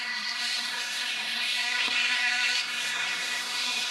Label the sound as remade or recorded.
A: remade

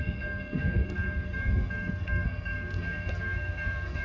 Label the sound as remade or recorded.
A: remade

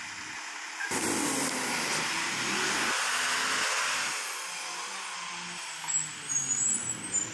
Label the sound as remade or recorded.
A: recorded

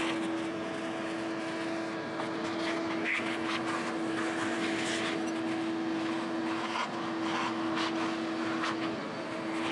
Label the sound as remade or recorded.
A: recorded